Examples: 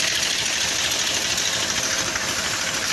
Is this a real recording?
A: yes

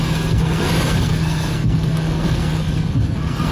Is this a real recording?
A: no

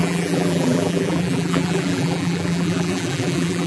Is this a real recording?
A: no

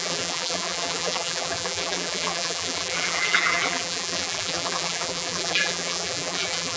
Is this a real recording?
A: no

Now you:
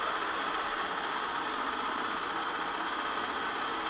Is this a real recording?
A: yes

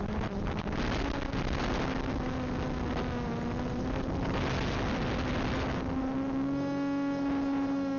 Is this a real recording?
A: yes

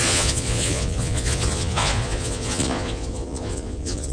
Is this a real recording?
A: no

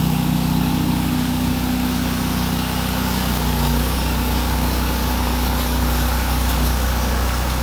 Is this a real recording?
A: no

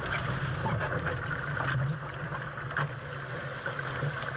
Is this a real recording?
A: yes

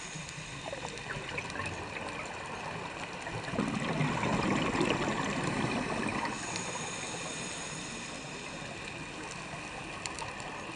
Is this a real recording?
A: yes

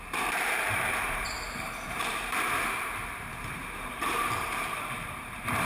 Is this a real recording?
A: no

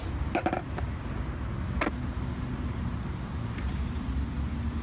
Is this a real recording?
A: yes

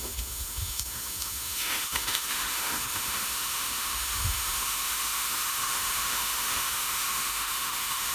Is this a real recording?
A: no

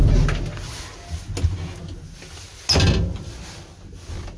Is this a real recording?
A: yes